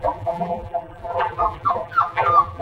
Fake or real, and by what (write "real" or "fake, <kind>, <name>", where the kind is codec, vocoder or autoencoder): fake, vocoder, BigVGAN v2